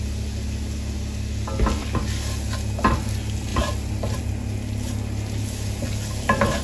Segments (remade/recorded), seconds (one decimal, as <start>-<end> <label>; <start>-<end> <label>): 0.0-3.5 recorded; 3.5-4.2 remade; 4.2-6.6 recorded